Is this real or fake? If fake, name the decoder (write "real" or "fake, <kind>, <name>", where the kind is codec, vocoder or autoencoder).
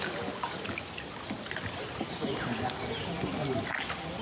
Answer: real